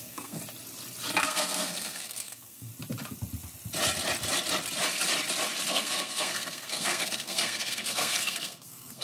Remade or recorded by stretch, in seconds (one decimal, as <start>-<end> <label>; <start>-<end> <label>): 0.0-0.4 remade; 0.4-1.2 recorded; 1.2-2.7 remade; 2.7-5.7 recorded; 5.7-9.0 remade